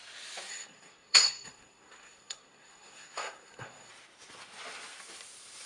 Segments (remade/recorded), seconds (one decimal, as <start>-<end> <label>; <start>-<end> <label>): 0.0-0.5 recorded; 0.5-3.9 remade; 3.9-5.7 recorded